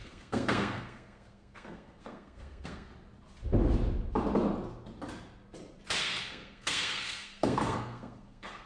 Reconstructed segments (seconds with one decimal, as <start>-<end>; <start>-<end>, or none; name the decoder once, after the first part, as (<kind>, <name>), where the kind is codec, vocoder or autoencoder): 0.0-2.9 (codec, SNAC); 6.0-8.7